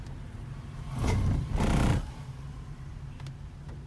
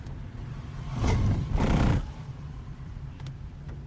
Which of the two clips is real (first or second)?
first